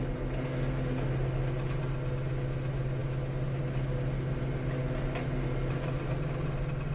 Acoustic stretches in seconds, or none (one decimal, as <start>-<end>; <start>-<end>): 0.0-6.9

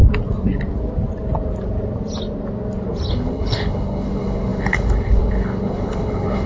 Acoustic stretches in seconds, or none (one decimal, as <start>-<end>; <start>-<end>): 0.0-3.1

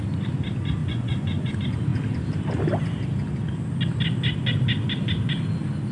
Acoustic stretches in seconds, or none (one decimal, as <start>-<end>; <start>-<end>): 0.0-0.8; 1.5-5.9

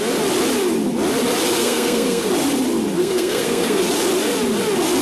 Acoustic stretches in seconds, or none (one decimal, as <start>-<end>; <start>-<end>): 0.0-1.6; 2.3-3.0; 3.8-5.0